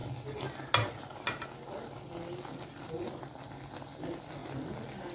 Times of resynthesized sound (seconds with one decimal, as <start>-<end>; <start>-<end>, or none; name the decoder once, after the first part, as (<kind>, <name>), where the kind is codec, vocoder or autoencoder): none